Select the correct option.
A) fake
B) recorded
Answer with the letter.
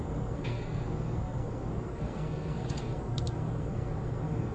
A